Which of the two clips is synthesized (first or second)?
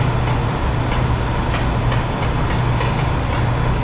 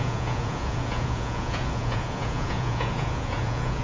second